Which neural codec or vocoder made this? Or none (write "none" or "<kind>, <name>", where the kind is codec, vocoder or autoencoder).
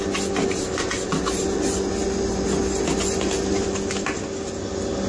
none